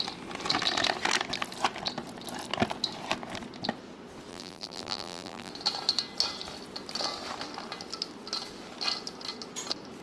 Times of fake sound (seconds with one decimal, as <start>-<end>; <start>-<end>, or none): 4.3-5.5